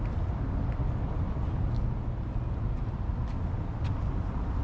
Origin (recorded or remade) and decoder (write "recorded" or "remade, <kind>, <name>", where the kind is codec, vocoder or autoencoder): recorded